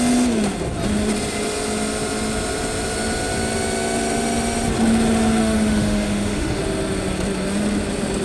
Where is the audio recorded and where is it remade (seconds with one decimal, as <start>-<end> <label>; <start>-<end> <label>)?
0.0-5.4 recorded; 5.4-6.6 remade; 6.6-8.2 recorded